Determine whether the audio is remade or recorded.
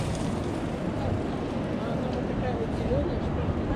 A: recorded